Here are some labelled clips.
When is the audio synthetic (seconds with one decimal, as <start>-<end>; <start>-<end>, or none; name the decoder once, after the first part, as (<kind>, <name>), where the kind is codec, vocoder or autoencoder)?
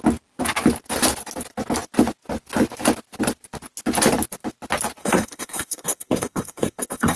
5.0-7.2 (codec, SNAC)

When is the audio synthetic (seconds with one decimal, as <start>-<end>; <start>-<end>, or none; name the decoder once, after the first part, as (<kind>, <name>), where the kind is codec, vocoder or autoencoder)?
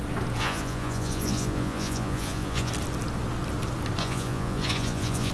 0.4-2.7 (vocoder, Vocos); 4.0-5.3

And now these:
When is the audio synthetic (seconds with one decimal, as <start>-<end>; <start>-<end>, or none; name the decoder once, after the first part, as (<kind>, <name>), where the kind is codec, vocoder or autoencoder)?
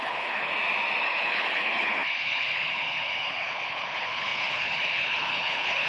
0.0-0.5 (codec, HILCodec); 1.0-5.9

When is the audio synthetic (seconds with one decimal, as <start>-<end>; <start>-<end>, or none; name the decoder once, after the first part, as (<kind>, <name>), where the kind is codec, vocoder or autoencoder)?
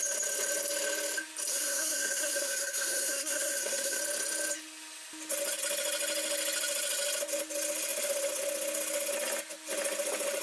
1.5-4.0 (codec, SNAC)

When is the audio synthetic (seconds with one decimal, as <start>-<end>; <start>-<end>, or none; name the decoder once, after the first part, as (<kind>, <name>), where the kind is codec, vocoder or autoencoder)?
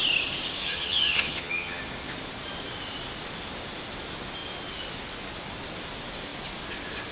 0.6-1.8 (vocoder, HiFi-GAN)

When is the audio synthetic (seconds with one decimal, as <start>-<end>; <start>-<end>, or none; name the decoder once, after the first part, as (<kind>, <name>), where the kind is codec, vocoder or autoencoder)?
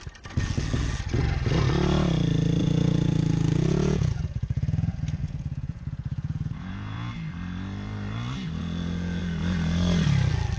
2.6-7.1 (vocoder, Vocos); 8.6-9.2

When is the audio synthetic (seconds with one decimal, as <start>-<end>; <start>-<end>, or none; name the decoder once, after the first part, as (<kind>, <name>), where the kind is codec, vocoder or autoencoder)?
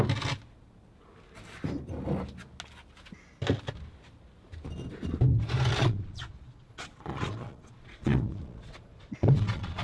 5.8-9.8 (vocoder, Vocos)